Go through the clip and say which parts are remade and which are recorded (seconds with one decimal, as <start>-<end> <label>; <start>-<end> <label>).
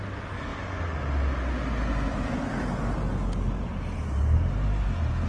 0.0-5.3 recorded